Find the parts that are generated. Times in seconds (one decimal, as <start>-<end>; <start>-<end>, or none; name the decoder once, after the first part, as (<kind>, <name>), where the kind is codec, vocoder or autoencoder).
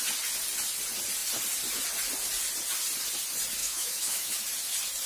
3.6-4.4 (autoencoder, DAC-VAE)